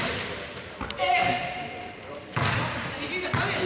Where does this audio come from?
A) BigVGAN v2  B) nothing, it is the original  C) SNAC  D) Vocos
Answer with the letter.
B